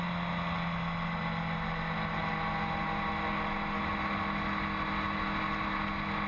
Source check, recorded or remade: recorded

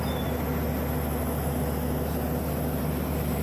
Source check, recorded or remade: recorded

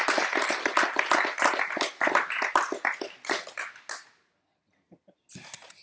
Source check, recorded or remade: recorded